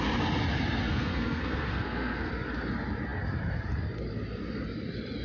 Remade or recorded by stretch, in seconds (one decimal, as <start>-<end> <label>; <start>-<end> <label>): 0.0-0.9 recorded; 0.9-2.3 remade; 2.3-5.2 recorded